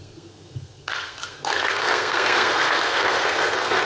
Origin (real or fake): fake